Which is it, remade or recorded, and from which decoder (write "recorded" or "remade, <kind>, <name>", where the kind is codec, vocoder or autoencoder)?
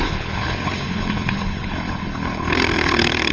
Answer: remade, codec, HILCodec